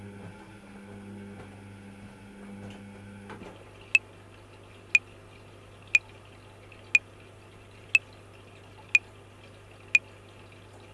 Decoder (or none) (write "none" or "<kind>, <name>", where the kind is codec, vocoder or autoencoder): none